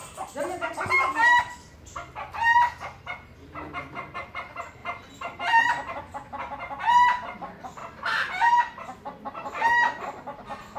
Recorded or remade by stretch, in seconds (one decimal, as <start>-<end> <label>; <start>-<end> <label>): 0.0-7.8 recorded; 7.8-8.6 remade; 8.6-10.8 recorded